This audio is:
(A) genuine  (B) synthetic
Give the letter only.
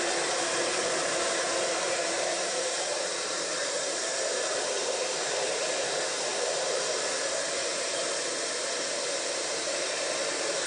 B